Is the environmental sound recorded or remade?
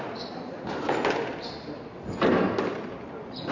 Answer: recorded